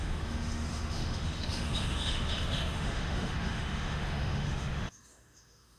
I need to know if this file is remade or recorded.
remade